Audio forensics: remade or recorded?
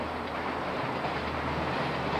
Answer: recorded